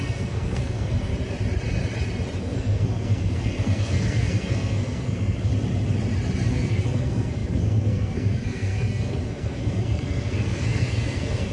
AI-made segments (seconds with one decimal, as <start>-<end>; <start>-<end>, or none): 0.0-1.1; 2.4-5.5; 6.5-11.5